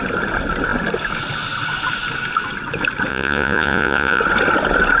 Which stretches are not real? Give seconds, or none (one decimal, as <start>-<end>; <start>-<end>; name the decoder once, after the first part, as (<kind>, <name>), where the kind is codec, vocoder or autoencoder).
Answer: 3.1-4.2 (vocoder, Vocos)